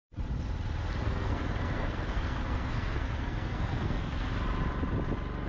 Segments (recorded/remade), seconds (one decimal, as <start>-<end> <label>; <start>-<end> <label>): 0.0-1.0 recorded; 1.0-4.3 remade; 4.3-5.5 recorded